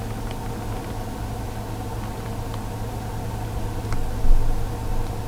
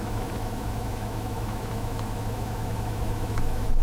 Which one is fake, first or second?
second